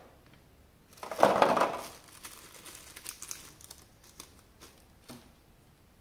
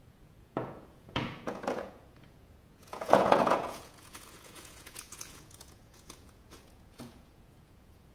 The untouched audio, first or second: first